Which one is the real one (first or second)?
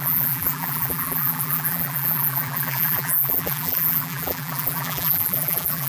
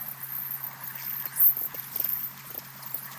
second